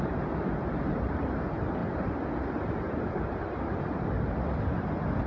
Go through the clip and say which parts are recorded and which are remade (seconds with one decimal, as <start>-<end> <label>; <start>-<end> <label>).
0.0-5.3 recorded